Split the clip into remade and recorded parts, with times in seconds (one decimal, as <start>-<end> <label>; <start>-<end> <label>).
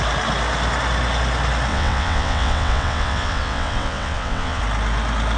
0.0-1.7 recorded; 1.7-4.6 remade; 4.6-5.4 recorded